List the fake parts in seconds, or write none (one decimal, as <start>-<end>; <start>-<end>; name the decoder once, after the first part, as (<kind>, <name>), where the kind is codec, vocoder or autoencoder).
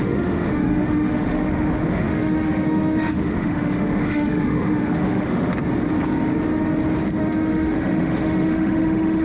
0.0-5.5 (autoencoder, DAC-VAE); 7.2-9.2